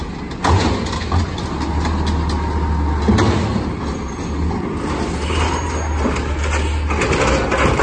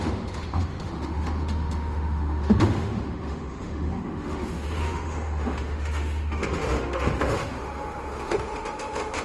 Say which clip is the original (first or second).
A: first